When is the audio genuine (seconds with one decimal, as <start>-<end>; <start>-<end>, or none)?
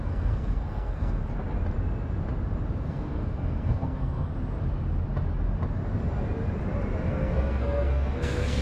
1.2-2.8; 4.3-7.1